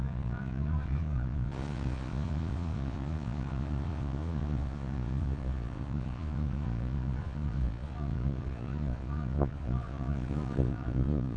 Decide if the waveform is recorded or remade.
remade